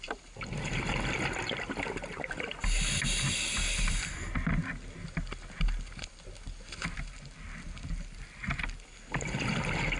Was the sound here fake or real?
real